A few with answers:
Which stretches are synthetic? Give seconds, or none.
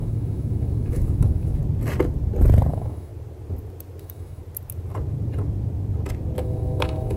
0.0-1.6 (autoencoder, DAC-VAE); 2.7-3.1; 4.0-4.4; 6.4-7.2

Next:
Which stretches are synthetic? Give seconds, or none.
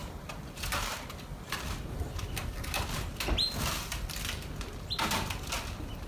none